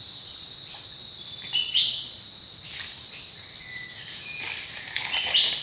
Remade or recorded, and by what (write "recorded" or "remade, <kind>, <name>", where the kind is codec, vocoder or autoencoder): recorded